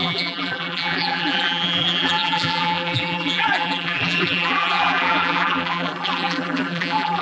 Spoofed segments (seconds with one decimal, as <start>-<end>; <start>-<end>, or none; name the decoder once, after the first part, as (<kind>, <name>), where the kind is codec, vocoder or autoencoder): 0.0-7.2 (vocoder, BigVGAN v2)